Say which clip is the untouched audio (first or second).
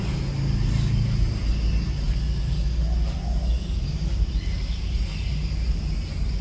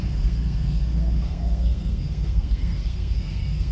first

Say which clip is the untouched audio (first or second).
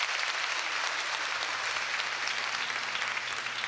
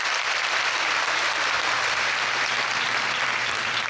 first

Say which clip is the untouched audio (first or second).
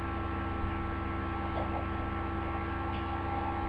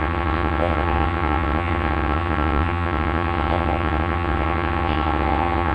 first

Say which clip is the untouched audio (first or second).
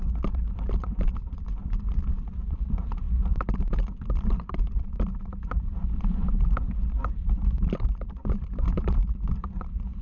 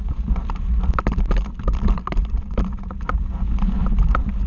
second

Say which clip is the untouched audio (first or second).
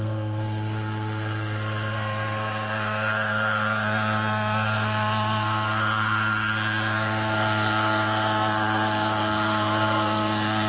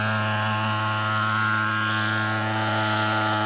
second